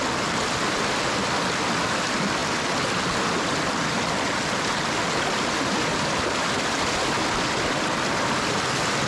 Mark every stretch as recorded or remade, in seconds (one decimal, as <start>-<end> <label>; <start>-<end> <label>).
0.0-9.1 recorded